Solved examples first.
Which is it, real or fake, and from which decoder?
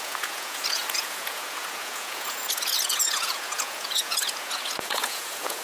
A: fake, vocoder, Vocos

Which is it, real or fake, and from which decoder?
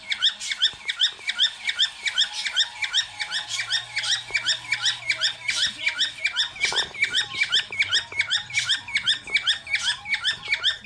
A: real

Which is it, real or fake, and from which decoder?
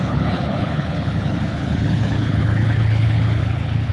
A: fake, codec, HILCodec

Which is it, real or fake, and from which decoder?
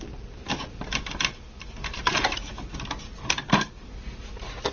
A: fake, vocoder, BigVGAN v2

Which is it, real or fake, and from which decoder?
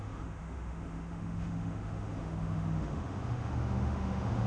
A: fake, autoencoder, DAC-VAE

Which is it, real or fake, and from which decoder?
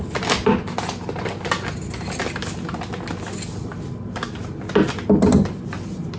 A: real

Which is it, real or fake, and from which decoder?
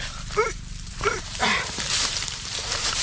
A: fake, vocoder, BigVGAN v2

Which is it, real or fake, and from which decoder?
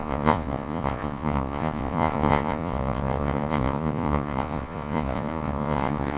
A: fake, vocoder, Vocos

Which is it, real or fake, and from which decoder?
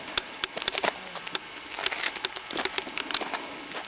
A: real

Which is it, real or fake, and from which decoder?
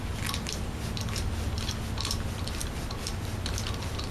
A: real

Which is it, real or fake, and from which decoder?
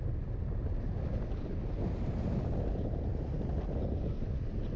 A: real